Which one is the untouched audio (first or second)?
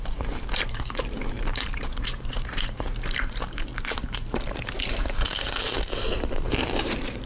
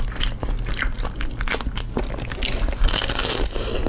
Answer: second